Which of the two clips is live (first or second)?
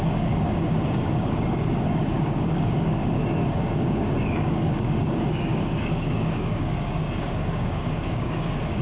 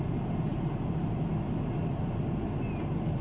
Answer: second